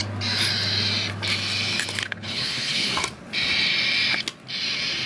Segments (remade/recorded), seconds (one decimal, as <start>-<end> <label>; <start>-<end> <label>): 0.0-2.0 recorded; 2.0-2.9 remade; 2.9-5.1 recorded